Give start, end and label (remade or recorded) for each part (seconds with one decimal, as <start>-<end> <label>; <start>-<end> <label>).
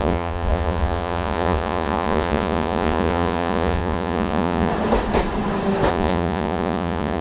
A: 0.0-4.7 remade; 4.7-5.9 recorded; 5.9-7.2 remade